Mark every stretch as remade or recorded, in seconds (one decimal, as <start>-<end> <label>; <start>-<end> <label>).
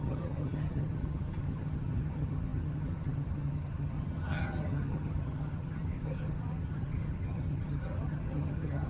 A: 0.0-8.9 remade